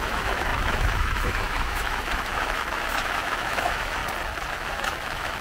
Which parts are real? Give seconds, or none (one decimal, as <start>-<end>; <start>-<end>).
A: 4.0-4.5